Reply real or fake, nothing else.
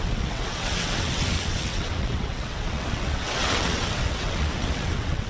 fake